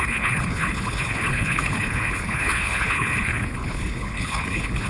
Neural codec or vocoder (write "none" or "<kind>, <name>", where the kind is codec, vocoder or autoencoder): codec, HILCodec